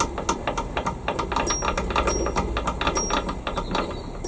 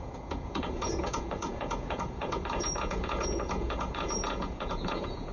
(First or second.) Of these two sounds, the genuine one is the first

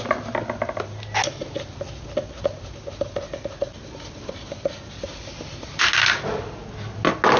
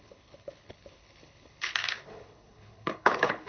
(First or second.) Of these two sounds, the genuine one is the first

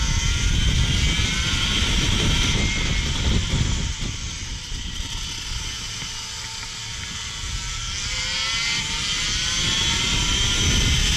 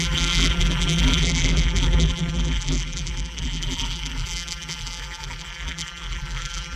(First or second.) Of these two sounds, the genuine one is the first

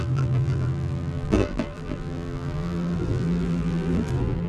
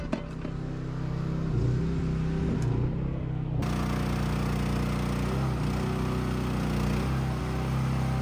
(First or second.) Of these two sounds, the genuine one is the second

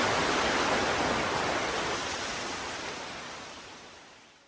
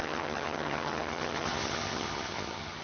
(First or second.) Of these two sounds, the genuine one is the first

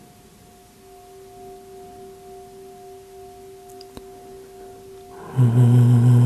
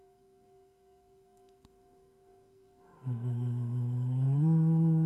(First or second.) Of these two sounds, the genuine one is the first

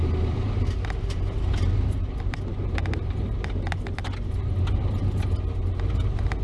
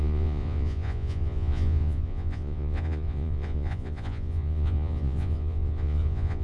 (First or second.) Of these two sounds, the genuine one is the first